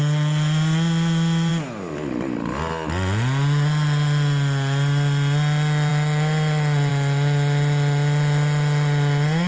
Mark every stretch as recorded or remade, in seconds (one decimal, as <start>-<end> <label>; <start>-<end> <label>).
0.0-9.5 recorded